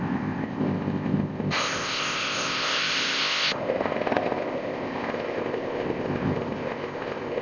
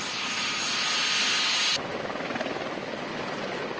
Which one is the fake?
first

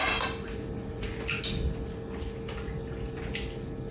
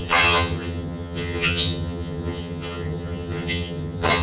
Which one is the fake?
second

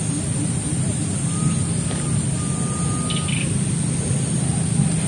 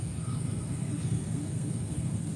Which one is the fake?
second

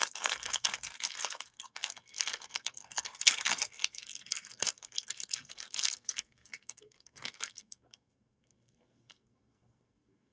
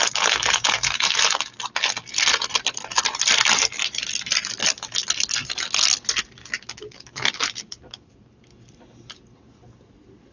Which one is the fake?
first